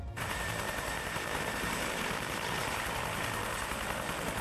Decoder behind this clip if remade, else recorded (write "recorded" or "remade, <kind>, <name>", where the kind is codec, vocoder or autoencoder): remade, vocoder, BigVGAN v2